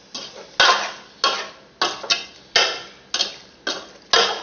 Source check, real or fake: real